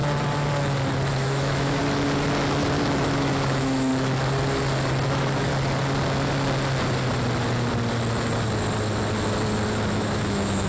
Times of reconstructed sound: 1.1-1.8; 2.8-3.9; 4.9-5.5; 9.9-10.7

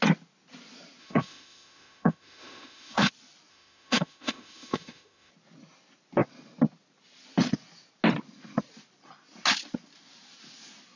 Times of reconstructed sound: 1.0-3.1; 3.5-5.3